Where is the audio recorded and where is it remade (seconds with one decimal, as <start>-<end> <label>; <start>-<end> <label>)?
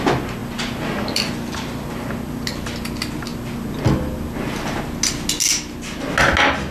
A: 0.0-6.7 recorded